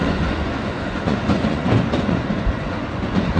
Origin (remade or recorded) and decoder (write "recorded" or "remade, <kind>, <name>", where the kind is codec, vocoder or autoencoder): remade, vocoder, Vocos